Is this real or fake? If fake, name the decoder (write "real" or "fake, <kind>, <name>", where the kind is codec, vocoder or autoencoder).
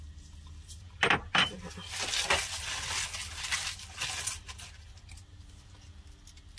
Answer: real